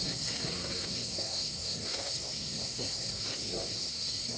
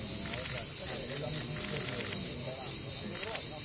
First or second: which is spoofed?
first